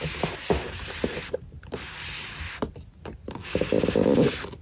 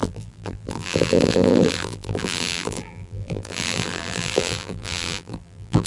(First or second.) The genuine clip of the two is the first